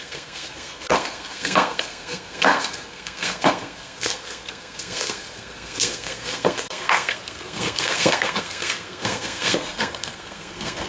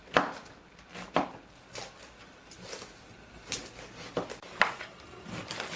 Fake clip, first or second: first